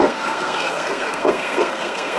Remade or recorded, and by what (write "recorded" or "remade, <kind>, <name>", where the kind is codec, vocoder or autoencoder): remade, codec, SNAC